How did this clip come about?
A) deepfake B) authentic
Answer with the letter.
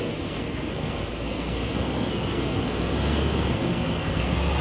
A